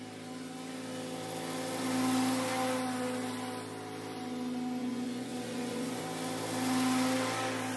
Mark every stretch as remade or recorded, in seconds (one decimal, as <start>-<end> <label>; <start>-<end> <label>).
0.0-4.8 recorded; 4.8-6.0 remade; 6.0-7.8 recorded